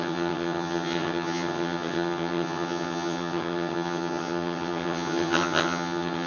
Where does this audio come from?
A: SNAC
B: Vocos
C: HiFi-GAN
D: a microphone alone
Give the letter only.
C